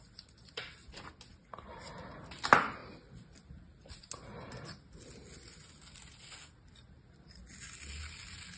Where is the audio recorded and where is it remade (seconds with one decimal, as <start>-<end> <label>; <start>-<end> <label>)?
0.0-2.8 recorded; 2.8-4.0 remade; 4.0-8.6 recorded